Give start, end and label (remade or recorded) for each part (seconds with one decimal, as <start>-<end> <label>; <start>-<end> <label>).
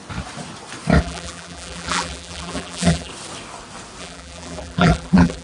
0.0-1.0 recorded; 1.0-3.1 remade; 3.1-4.0 recorded; 4.0-5.4 remade